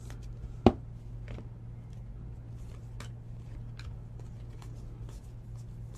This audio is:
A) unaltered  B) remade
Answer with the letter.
A